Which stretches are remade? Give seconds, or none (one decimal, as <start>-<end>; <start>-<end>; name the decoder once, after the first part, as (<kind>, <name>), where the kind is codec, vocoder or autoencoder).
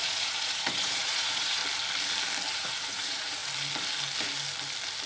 0.0-1.6 (vocoder, Vocos); 2.5-3.4